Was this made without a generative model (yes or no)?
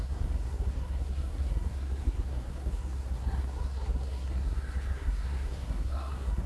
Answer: no